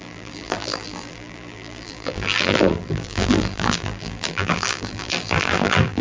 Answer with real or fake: fake